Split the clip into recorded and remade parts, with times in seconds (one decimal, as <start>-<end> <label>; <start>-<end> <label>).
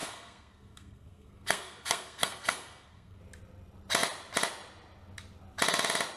0.0-3.2 remade; 3.2-6.2 recorded